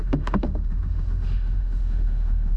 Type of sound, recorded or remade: remade